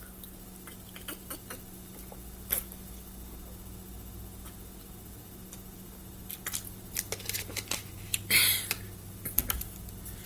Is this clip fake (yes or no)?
no